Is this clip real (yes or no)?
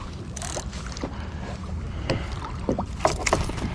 yes